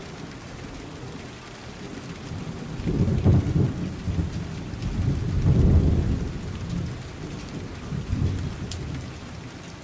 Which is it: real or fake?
real